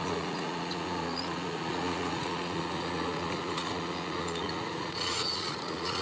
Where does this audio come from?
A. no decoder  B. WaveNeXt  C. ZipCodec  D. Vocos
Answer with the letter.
D